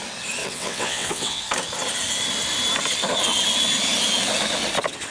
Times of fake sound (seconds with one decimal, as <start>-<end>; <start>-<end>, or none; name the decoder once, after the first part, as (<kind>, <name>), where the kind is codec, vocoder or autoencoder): 0.4-1.4 (vocoder, WaveNeXt)